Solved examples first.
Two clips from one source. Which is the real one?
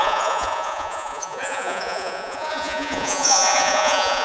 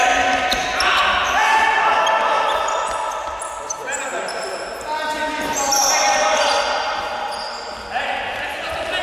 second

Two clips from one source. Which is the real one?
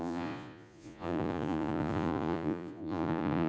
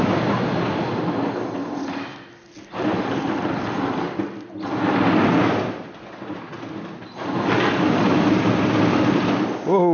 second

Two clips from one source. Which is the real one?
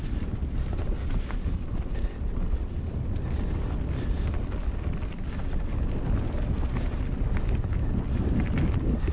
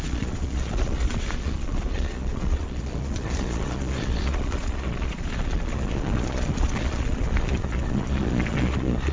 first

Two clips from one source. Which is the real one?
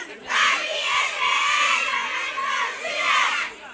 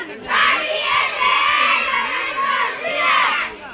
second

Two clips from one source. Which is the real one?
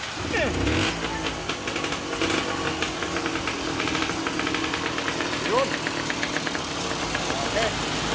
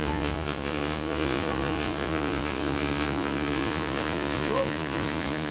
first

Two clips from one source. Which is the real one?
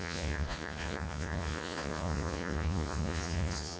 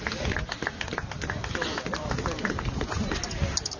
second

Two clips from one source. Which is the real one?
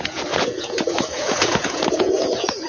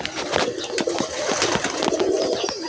second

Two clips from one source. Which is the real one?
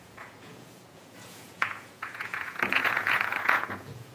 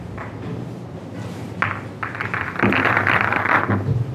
second